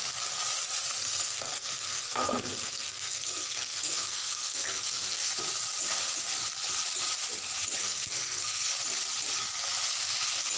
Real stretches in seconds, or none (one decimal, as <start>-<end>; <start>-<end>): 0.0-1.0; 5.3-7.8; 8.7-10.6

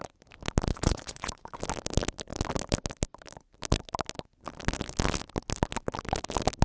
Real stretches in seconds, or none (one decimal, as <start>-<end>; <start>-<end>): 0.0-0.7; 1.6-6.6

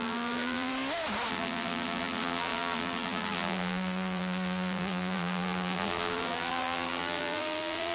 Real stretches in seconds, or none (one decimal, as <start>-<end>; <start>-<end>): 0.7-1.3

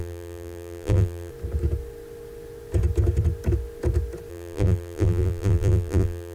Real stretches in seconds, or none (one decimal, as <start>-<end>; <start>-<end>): 1.3-4.3

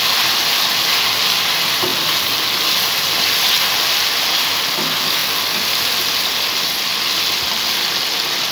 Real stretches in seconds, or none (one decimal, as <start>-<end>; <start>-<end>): 0.0-8.5